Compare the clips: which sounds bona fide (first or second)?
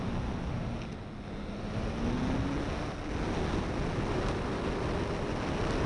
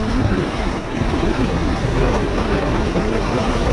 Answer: first